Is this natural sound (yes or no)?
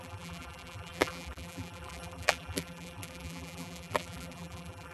no